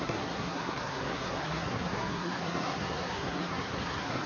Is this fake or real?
fake